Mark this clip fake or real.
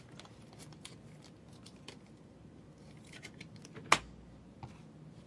real